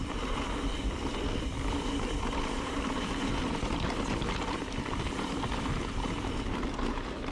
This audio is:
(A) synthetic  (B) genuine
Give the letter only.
B